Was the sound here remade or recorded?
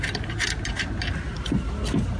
recorded